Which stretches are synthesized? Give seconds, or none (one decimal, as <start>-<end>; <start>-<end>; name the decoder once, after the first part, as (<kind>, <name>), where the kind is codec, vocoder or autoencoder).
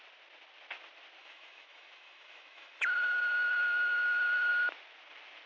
1.2-4.5 (autoencoder, DAC-VAE)